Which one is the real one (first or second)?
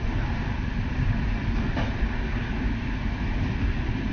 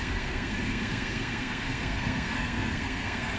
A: first